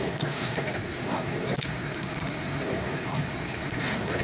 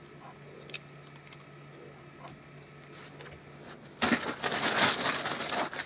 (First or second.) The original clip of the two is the second